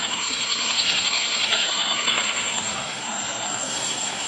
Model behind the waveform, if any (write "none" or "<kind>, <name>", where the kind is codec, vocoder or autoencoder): codec, SNAC